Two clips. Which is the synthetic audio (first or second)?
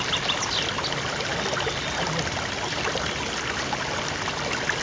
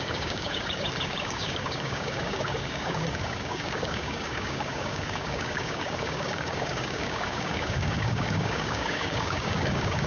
second